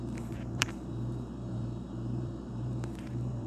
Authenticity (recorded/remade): remade